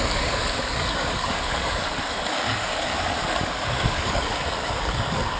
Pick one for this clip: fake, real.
fake